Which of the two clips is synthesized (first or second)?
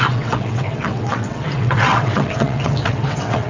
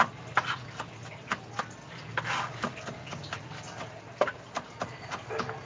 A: first